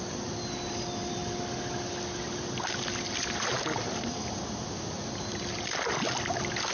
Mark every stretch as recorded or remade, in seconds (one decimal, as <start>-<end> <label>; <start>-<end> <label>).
0.0-6.7 recorded